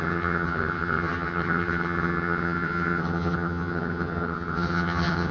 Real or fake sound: fake